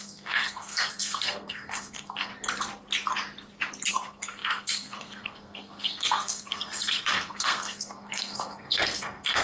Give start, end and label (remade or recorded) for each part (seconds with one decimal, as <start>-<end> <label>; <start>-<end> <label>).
0.0-2.3 remade; 2.3-3.9 recorded; 3.9-9.4 remade